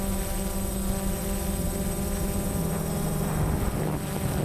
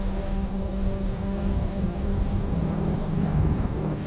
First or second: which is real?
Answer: first